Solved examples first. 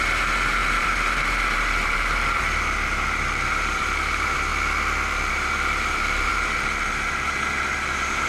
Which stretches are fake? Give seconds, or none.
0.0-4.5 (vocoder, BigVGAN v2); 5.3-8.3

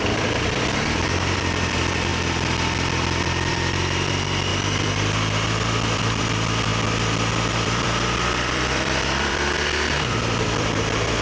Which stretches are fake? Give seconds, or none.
0.0-2.1 (vocoder, BigVGAN v2); 3.5-6.7; 7.3-11.2

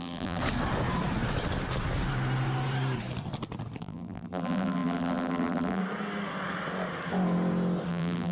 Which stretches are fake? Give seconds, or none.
0.0-0.4 (vocoder, BigVGAN v2); 3.8-5.8; 7.9-8.3

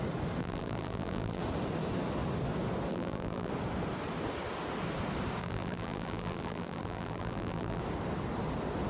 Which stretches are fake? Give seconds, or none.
0.4-1.4 (vocoder, BigVGAN v2); 2.9-3.5; 5.4-7.8

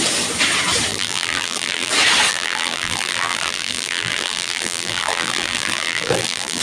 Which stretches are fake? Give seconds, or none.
0.9-1.9 (vocoder, BigVGAN v2); 2.3-6.6

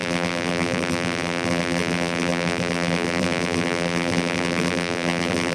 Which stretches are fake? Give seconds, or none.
0.0-5.5 (vocoder, BigVGAN v2)

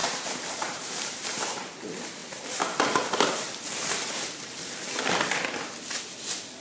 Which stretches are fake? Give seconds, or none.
0.0-1.7 (vocoder, BigVGAN v2)

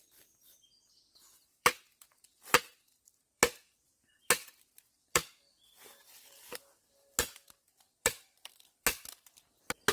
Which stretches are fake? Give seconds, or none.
0.0-9.9 (vocoder, BigVGAN v2)